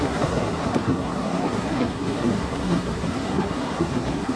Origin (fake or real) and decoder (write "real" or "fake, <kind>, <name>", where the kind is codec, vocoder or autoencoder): fake, codec, SNAC